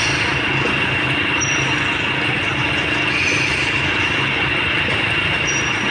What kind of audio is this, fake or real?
real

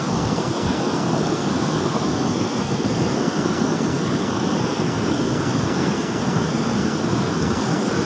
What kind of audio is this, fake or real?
fake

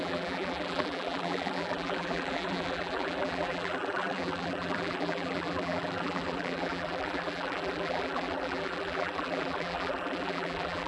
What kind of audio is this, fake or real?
fake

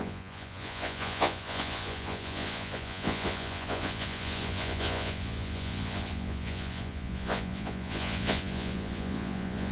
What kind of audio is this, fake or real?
fake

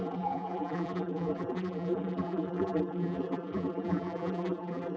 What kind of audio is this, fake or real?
fake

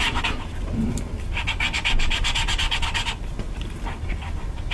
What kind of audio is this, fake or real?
real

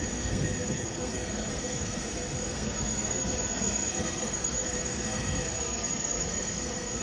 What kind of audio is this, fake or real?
fake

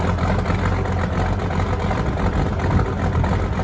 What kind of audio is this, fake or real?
real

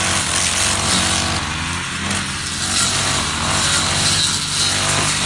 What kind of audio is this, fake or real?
real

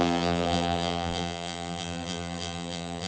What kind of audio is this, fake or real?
fake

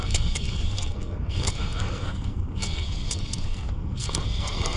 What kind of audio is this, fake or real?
fake